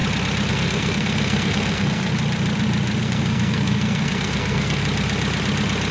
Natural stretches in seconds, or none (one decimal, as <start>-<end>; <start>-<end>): 0.0-0.5; 2.1-3.0; 4.8-5.9